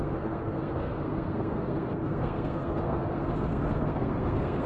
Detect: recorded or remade remade